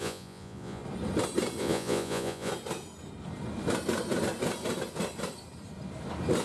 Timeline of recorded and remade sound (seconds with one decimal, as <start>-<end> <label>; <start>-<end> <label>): 0.0-0.8 remade; 0.8-1.6 recorded; 1.6-2.5 remade; 2.5-6.4 recorded